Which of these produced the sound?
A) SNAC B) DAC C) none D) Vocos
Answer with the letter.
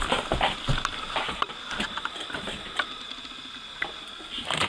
C